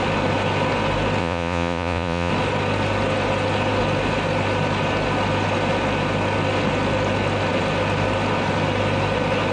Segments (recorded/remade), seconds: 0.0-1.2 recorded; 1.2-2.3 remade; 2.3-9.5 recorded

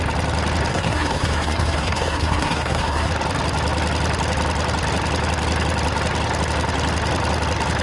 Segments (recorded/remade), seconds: 0.0-0.7 recorded; 0.7-3.1 remade; 3.1-7.8 recorded

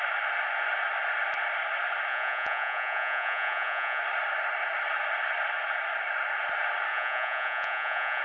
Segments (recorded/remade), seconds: 0.0-2.1 recorded; 2.1-4.0 remade; 4.0-6.9 recorded; 6.9-8.2 remade

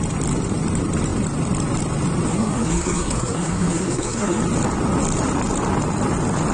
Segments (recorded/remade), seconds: 0.0-2.3 recorded; 2.3-4.4 remade; 4.4-6.5 recorded

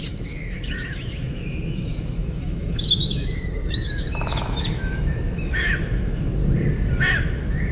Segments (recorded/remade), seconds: 0.0-6.4 remade; 6.4-7.1 recorded; 7.1-7.7 remade

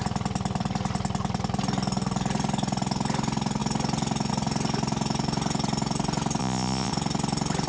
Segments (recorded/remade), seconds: 0.0-6.4 recorded; 6.4-6.9 remade; 6.9-7.7 recorded